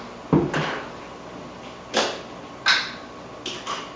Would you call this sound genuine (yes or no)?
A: yes